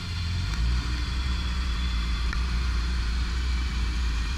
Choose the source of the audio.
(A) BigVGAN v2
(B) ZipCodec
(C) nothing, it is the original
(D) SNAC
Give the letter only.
A